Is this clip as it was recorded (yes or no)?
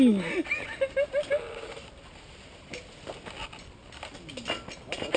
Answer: yes